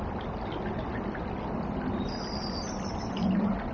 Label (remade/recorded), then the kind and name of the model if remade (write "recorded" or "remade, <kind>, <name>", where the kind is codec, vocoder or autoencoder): recorded